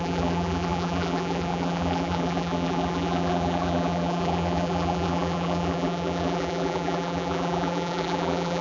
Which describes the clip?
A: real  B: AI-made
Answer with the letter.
B